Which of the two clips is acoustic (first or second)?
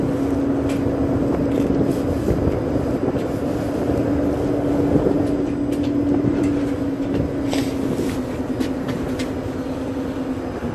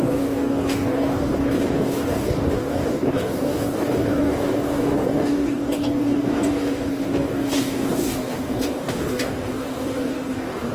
first